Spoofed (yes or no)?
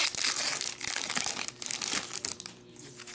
no